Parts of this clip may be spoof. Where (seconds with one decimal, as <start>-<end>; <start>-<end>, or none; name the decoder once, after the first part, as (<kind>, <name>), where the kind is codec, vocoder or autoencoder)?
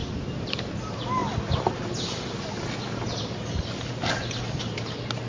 0.0-0.7 (vocoder, BigVGAN v2)